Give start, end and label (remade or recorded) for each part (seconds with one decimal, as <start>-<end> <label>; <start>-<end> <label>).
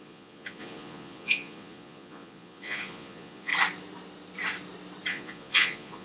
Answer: 0.0-3.5 remade; 3.5-5.1 recorded; 5.1-6.0 remade